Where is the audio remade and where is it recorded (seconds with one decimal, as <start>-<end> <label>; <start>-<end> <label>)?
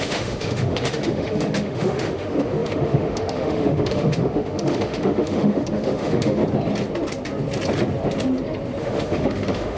0.0-6.4 remade; 6.4-8.8 recorded; 8.8-9.8 remade